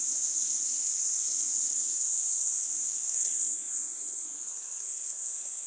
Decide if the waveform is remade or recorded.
remade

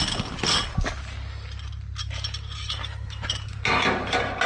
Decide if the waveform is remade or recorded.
recorded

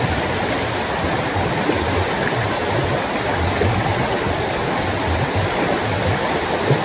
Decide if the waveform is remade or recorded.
recorded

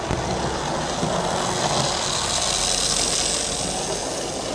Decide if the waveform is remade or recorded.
recorded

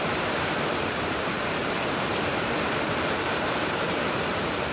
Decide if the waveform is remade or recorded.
remade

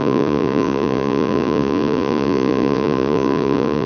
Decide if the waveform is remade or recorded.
remade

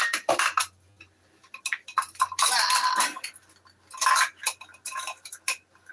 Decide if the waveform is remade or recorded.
recorded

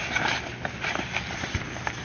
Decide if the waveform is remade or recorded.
recorded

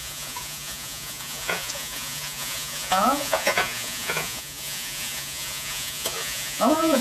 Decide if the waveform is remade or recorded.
remade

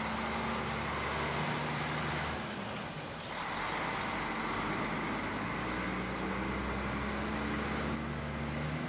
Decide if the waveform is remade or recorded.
recorded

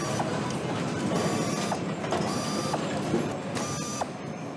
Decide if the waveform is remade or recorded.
recorded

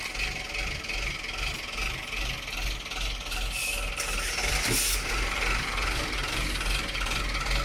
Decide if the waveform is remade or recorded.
recorded